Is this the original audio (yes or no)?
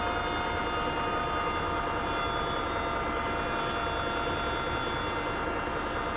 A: yes